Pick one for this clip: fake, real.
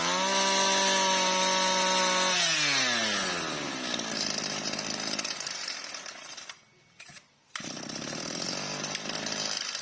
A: real